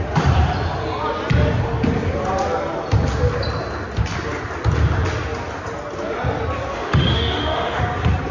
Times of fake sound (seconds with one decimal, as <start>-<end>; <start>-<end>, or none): 6.7-7.8